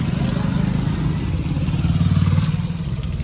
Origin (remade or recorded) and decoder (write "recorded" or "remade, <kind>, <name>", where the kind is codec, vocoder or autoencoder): recorded